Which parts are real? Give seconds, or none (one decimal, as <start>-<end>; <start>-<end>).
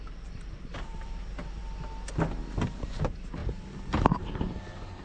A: 1.6-2.8; 3.4-4.2